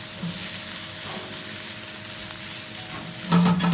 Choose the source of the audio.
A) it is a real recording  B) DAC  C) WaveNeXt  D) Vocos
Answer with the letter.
A